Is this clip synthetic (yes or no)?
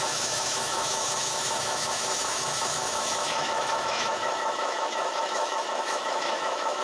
yes